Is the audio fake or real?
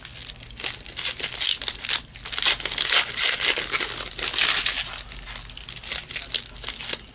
real